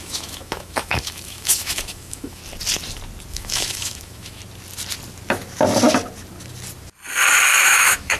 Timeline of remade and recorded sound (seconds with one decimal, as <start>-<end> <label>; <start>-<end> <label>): 0.0-2.4 remade; 2.4-3.3 recorded; 3.3-4.4 remade; 4.4-7.6 recorded; 7.6-8.2 remade